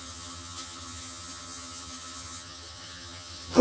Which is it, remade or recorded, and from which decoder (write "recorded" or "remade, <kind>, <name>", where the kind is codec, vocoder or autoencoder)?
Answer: remade, vocoder, HiFi-GAN